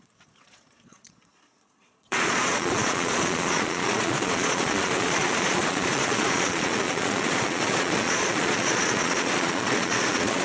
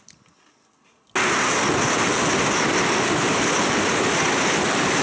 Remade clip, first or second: first